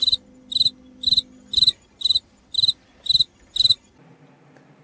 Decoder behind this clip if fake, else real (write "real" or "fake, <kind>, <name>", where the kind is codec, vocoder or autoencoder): real